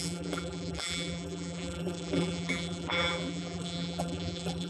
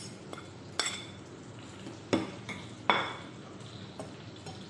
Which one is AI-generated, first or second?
first